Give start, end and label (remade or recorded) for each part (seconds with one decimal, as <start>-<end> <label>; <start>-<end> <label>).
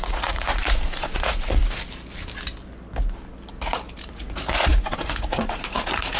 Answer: 0.0-1.6 remade; 1.6-4.1 recorded; 4.1-6.2 remade